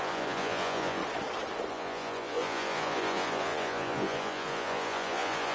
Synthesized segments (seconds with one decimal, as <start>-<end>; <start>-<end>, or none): 0.0-1.0; 1.7-5.5